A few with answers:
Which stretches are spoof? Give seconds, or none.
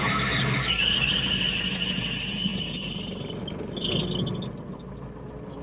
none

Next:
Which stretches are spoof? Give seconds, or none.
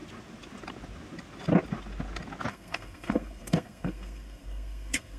2.5-5.2 (codec, SNAC)